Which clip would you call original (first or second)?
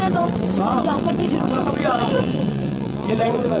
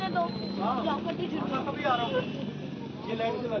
second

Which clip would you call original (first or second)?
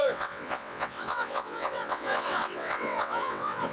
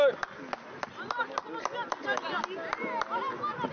second